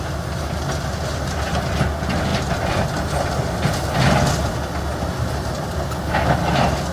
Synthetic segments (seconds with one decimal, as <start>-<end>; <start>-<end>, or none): none